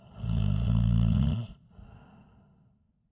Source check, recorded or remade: recorded